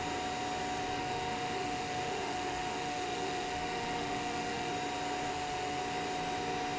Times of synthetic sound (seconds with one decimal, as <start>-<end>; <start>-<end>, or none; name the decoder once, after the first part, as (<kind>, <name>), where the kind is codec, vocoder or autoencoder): 1.0-4.7 (autoencoder, DAC-VAE); 5.3-5.8